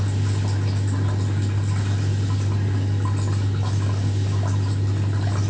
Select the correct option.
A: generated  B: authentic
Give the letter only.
B